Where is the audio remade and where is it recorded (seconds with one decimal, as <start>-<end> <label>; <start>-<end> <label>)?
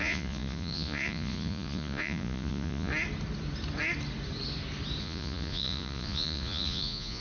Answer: 0.0-2.9 remade; 2.9-5.0 recorded; 5.0-7.2 remade